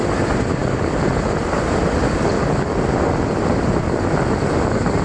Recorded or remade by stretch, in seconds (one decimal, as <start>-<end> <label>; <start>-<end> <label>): 0.0-5.0 recorded